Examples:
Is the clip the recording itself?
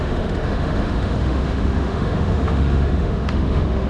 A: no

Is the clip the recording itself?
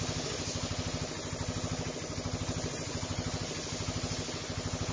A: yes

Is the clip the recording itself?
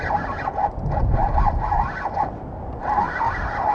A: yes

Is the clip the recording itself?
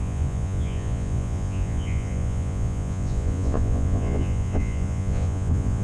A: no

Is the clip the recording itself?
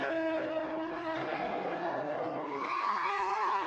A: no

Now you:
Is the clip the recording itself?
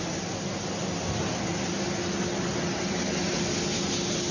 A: yes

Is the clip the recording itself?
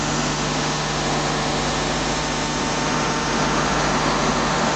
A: no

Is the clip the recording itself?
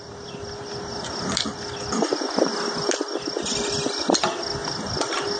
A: yes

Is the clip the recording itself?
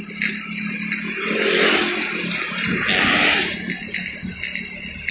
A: yes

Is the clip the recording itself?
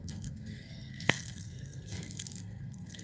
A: no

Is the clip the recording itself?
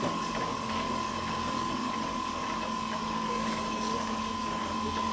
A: no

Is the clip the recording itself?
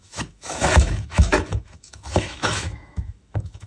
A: no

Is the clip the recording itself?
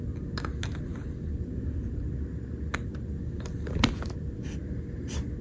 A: yes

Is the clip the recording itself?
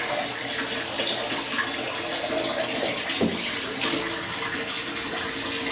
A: yes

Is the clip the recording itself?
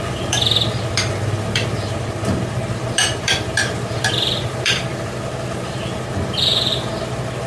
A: no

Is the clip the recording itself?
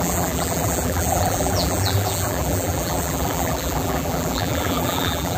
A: no